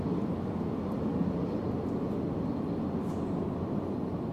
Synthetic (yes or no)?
no